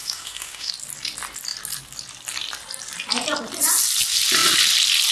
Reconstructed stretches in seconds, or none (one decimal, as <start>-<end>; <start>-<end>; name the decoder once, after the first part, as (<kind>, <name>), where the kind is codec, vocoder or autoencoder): 0.0-0.7 (autoencoder, DAC-VAE)